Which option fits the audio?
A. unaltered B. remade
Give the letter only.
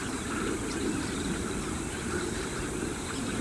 B